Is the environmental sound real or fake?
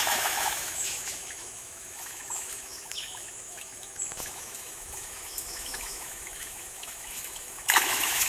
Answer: fake